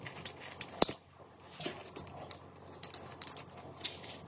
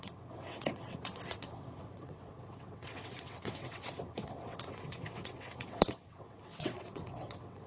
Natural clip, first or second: first